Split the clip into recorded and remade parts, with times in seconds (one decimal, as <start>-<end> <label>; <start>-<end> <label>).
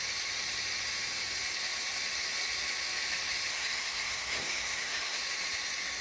0.0-3.5 recorded; 3.5-5.2 remade; 5.2-6.0 recorded